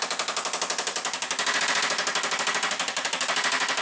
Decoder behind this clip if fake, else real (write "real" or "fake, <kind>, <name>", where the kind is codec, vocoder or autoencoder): real